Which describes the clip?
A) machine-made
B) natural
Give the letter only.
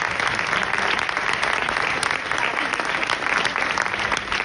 B